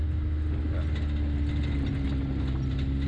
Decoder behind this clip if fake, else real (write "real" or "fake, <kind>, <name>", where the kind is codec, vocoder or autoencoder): real